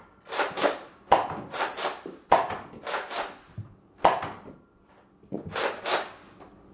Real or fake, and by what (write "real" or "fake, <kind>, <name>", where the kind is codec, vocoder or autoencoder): real